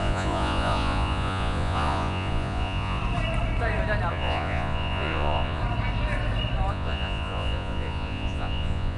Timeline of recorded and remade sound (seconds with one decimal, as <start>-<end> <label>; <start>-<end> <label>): 0.0-3.0 remade; 3.0-4.1 recorded; 4.1-5.6 remade; 5.6-6.7 recorded; 6.7-9.0 remade

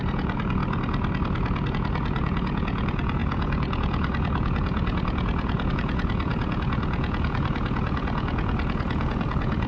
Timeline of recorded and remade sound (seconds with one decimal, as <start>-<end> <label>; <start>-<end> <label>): 0.0-0.6 remade; 0.6-1.7 recorded; 1.7-9.7 remade

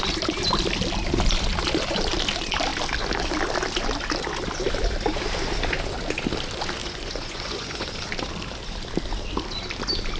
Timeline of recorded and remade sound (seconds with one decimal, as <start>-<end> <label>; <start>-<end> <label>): 0.0-6.8 recorded; 6.8-7.9 remade; 7.9-10.2 recorded

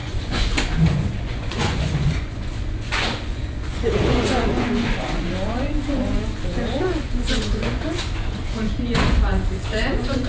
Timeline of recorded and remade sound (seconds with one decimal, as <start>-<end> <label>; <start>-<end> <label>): 0.0-10.3 remade